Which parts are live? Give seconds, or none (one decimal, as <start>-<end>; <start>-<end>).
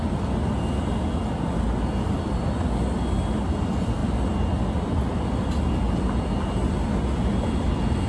0.0-8.1